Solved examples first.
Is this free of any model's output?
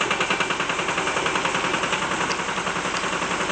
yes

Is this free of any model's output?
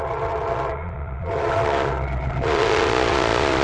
no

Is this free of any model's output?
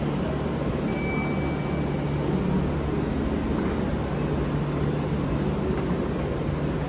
yes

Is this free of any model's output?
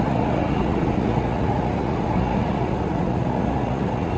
no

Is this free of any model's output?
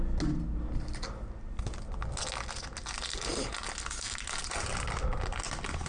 yes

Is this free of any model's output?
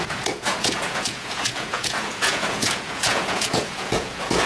no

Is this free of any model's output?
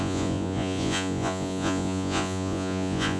no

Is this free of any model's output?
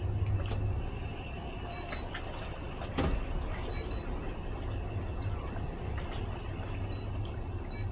yes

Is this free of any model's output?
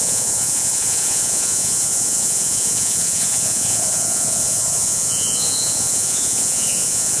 no